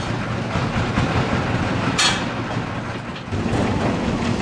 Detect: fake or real real